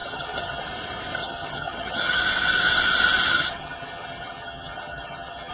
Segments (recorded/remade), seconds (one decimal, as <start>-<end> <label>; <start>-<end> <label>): 0.0-0.6 remade; 0.6-1.2 recorded; 1.2-2.2 remade; 2.2-3.3 recorded; 3.3-5.5 remade